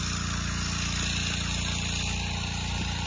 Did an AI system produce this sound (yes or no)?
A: no